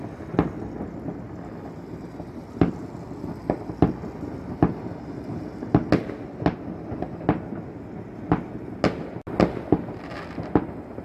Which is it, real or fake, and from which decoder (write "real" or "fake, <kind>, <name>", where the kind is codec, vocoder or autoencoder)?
real